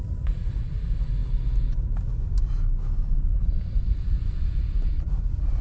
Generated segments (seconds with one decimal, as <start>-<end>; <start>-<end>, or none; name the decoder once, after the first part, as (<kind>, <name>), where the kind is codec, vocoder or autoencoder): 0.0-0.6 (vocoder, Vocos); 3.4-5.6